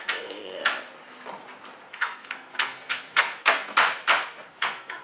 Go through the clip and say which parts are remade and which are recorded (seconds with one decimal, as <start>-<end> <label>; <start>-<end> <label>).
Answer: 0.0-0.6 remade; 0.6-1.9 recorded; 1.9-3.7 remade; 3.7-4.5 recorded; 4.5-5.0 remade